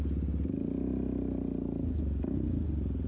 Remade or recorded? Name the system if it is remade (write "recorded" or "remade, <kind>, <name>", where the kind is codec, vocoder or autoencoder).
recorded